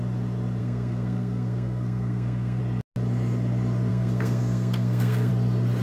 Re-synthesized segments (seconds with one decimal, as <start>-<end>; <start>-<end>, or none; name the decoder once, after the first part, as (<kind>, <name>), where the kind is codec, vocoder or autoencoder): 0.6-2.6 (codec, SNAC); 3.9-5.3